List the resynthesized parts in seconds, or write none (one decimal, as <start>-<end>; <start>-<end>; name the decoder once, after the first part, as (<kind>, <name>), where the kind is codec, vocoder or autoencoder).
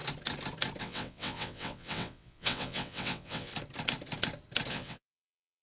0.8-3.5 (vocoder, WaveNeXt); 4.7-5.6